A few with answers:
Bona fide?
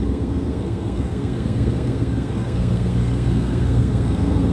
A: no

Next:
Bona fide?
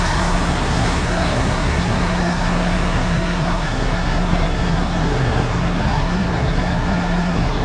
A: no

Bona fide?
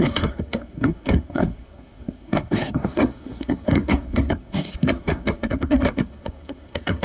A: no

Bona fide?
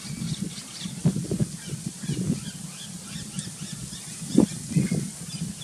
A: yes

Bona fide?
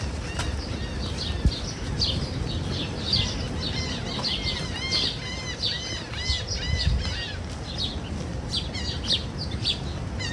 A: yes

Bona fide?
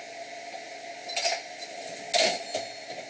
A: yes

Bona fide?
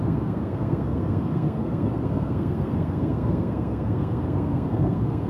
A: no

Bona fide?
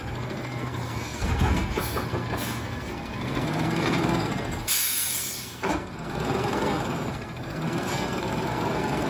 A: no